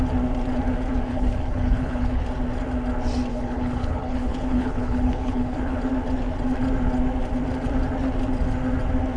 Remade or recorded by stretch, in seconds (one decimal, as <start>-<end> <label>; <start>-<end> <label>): 0.0-1.1 recorded; 1.1-2.2 remade; 2.2-3.3 recorded; 3.3-5.8 remade; 5.8-9.2 recorded

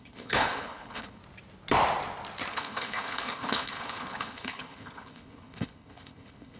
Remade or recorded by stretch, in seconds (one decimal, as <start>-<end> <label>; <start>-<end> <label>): 0.0-1.2 remade; 1.2-2.5 recorded; 2.5-6.6 remade

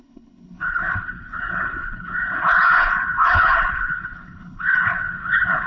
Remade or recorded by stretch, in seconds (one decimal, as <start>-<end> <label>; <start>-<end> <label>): 0.0-5.7 remade